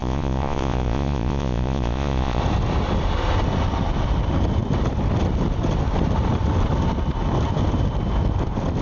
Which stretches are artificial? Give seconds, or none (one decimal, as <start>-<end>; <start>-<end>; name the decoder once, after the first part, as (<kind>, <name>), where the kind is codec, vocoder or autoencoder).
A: 0.0-2.4 (vocoder, Vocos)